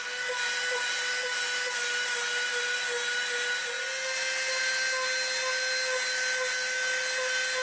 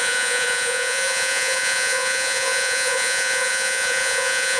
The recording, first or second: first